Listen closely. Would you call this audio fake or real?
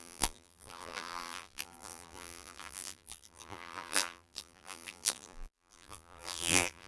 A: fake